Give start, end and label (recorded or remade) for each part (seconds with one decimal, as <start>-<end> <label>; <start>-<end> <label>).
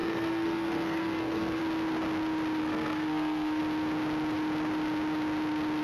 0.0-1.6 remade; 1.6-2.6 recorded; 2.6-3.6 remade; 3.6-5.8 recorded